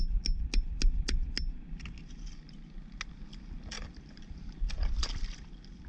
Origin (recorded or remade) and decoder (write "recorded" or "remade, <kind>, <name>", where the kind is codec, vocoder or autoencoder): recorded